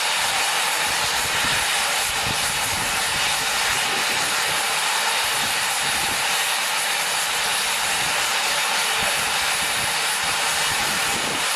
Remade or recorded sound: remade